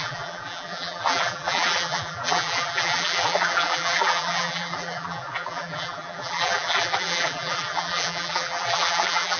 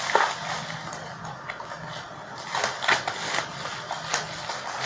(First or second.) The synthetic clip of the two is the first